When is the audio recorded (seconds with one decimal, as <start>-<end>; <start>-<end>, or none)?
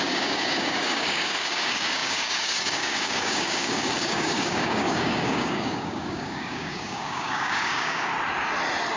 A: 8.1-9.0